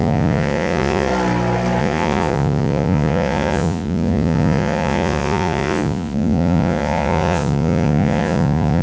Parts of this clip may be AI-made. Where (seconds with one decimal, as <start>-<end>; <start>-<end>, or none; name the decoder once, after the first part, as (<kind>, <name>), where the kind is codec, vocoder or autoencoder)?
0.0-1.1 (vocoder, Vocos); 1.8-8.8